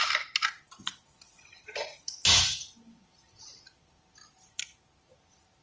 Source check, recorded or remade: recorded